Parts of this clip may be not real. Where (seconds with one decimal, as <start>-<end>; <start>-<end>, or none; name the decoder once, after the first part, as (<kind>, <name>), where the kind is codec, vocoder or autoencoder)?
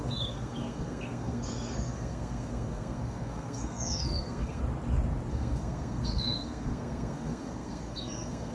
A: 0.0-4.6 (codec, SNAC); 5.3-8.5